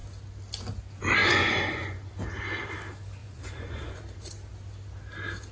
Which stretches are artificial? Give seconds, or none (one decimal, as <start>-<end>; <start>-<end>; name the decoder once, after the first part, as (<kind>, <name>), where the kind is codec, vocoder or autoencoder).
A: 1.2-2.0 (vocoder, Vocos); 3.2-4.0

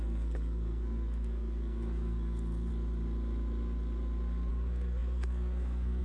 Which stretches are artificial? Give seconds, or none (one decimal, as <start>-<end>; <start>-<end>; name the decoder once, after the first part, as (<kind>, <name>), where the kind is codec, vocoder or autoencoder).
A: 0.0-2.7 (codec, SNAC); 4.5-6.0